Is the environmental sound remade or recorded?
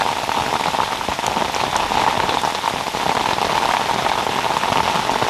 recorded